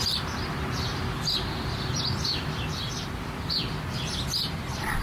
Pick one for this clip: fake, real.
fake